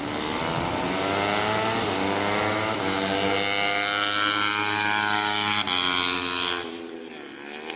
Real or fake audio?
real